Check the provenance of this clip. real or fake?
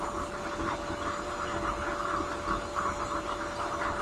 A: real